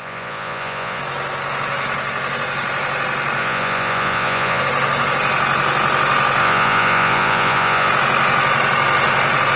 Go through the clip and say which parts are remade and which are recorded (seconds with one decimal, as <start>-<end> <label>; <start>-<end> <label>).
0.0-1.0 remade; 1.0-3.4 recorded; 3.4-4.6 remade; 4.6-6.4 recorded; 6.4-7.9 remade; 7.9-9.6 recorded